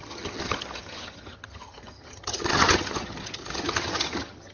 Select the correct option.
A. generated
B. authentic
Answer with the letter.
A